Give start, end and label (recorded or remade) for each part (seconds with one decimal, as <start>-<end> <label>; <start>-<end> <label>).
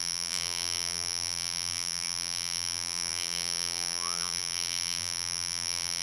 0.0-6.0 remade